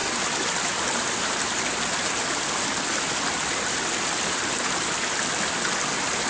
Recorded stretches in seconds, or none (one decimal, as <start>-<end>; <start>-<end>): 0.0-6.3